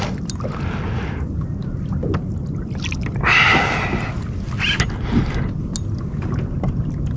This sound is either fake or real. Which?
real